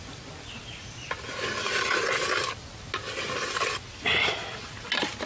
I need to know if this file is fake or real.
real